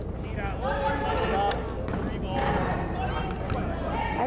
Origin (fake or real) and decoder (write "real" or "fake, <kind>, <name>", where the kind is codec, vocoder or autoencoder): real